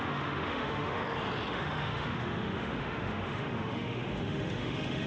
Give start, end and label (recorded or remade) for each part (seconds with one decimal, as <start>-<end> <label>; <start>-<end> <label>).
0.0-1.0 remade; 1.0-1.5 recorded; 1.5-5.1 remade